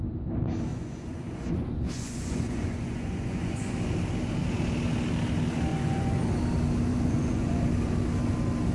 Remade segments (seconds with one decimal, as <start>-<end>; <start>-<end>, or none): 0.7-3.7; 5.7-6.2; 6.9-7.6